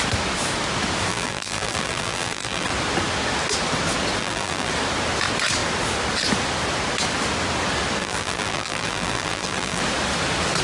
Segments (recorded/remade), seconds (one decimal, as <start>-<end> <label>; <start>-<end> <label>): 0.0-1.1 recorded; 1.1-2.7 remade; 2.7-4.2 recorded; 4.2-4.7 remade; 4.7-8.0 recorded; 8.0-9.8 remade; 9.8-10.6 recorded